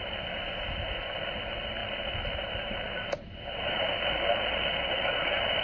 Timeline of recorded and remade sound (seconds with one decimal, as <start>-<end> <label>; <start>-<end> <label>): 0.0-5.6 recorded